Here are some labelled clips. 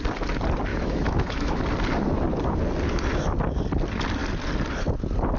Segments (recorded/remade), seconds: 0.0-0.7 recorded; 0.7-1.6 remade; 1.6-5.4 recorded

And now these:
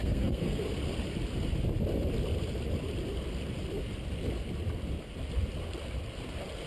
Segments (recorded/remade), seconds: 0.0-0.6 remade; 0.6-6.7 recorded